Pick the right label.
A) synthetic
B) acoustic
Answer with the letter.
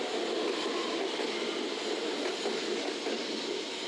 B